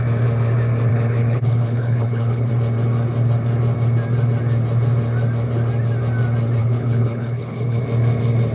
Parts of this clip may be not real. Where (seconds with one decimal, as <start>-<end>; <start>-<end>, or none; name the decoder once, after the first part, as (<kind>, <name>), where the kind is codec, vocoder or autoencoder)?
0.9-2.5 (codec, HILCodec); 6.6-7.8